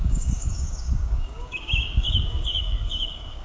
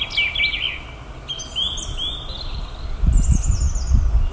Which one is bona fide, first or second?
second